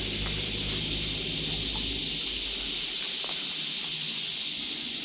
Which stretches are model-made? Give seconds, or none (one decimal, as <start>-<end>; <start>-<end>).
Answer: 3.9-5.0